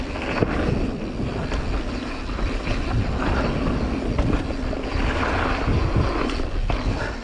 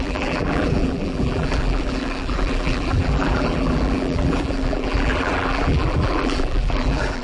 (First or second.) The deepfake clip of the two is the second